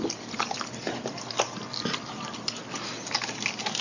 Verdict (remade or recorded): recorded